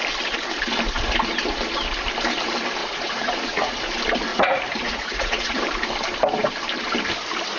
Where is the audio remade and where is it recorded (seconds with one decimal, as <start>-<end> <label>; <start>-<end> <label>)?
0.0-2.8 recorded; 2.8-3.7 remade; 3.7-4.3 recorded; 4.3-5.6 remade; 5.6-7.6 recorded